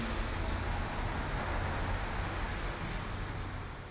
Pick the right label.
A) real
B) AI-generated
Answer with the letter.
A